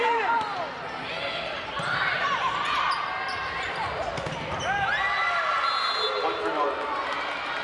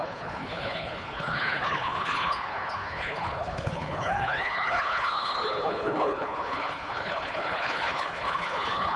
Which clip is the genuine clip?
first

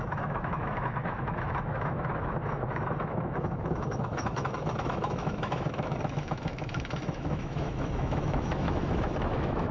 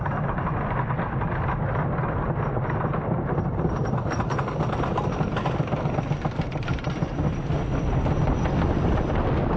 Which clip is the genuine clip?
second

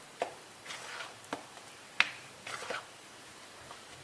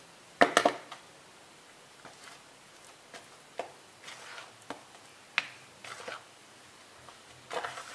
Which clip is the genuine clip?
second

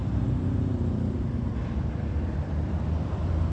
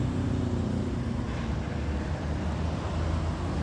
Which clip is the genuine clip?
second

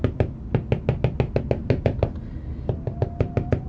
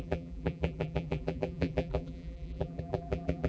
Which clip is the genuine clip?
first